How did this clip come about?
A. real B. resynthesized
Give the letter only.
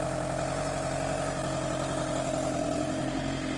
A